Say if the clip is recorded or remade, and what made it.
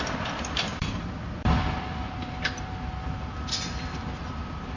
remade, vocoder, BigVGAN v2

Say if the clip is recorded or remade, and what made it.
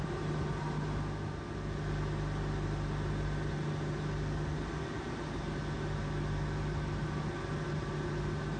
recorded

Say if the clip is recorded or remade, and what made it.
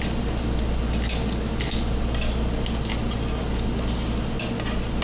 recorded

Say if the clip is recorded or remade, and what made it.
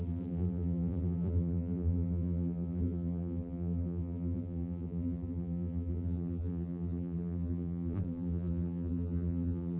remade, vocoder, BigVGAN v2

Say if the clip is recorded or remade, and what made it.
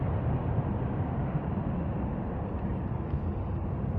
remade, vocoder, BigVGAN v2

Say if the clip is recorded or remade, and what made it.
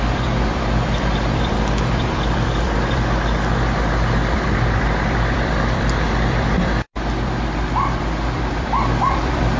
remade, vocoder, BigVGAN v2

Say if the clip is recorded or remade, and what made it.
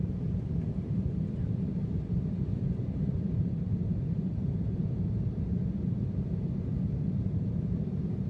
remade, vocoder, BigVGAN v2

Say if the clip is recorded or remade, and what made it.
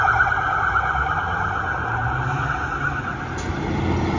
recorded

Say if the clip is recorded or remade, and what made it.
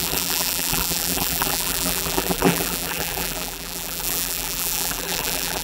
remade, vocoder, BigVGAN v2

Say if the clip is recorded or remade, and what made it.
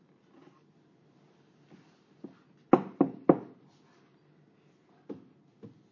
recorded